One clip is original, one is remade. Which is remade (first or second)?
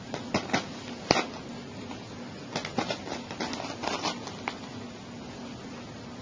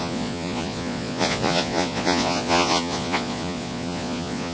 second